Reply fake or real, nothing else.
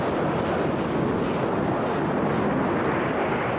real